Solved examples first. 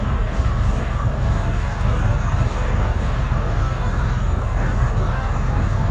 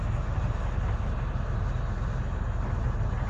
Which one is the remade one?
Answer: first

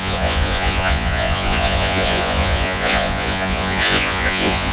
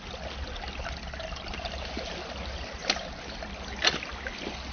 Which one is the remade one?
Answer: first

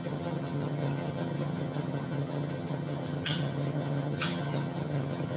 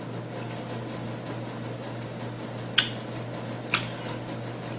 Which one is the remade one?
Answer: first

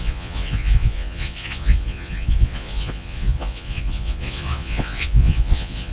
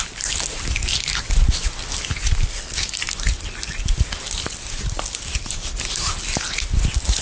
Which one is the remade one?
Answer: first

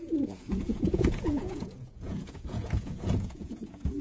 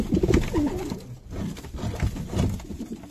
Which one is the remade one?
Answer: first